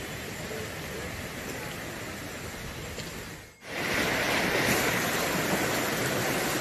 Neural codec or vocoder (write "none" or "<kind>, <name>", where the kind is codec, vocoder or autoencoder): none